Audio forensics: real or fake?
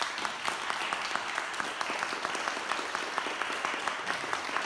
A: real